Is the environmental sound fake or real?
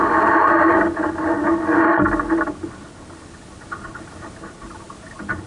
real